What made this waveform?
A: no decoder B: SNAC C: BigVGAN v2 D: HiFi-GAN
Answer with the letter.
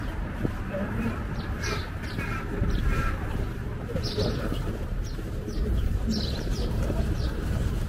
C